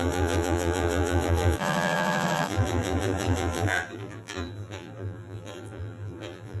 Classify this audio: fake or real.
fake